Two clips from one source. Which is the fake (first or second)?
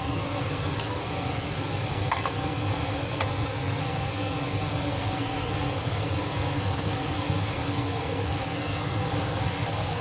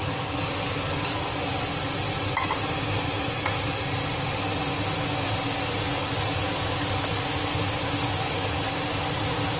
first